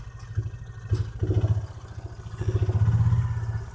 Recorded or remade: recorded